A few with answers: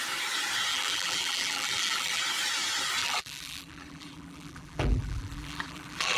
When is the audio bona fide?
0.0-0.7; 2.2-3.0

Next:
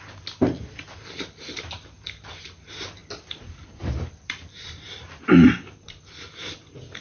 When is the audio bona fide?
0.0-3.0; 5.2-7.0

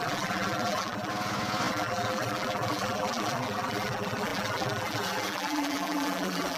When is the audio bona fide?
1.1-1.7

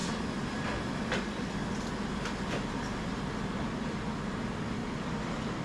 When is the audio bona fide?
3.4-4.8

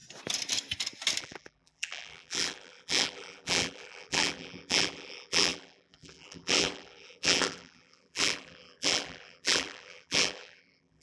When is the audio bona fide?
0.0-1.2